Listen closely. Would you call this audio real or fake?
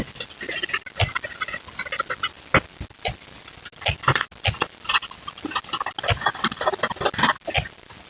real